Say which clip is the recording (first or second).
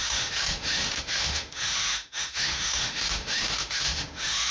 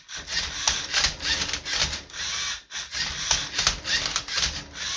second